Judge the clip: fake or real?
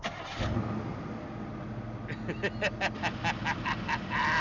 real